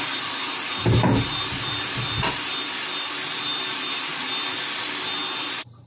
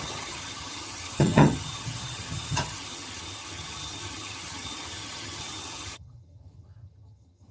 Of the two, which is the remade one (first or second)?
second